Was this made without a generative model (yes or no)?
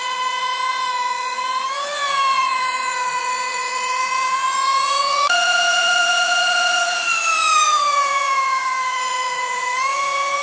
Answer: no